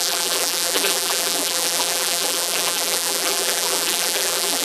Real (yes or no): no